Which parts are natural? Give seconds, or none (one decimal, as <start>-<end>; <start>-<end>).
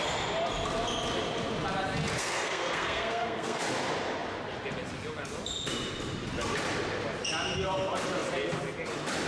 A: 0.0-2.2; 3.6-9.3